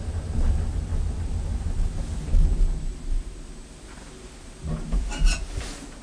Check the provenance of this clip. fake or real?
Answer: real